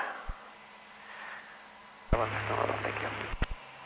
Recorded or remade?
recorded